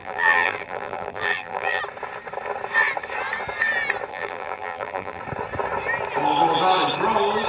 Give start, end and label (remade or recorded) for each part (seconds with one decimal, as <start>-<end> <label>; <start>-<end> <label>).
0.0-1.8 remade; 1.8-4.1 recorded; 4.1-5.2 remade; 5.2-7.5 recorded